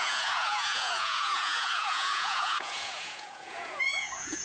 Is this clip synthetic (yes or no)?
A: yes